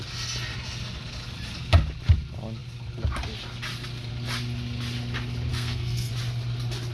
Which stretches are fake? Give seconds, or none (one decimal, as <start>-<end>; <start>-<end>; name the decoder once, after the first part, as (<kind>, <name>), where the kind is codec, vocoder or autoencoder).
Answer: 5.5-6.1 (codec, SNAC)